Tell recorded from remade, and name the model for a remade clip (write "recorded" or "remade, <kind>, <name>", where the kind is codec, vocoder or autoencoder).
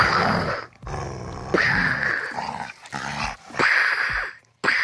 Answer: recorded